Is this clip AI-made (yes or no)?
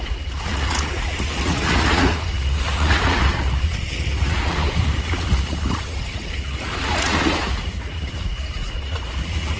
yes